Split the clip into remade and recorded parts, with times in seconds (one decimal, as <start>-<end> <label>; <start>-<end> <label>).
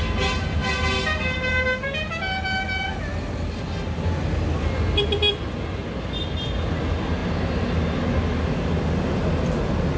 0.0-10.0 recorded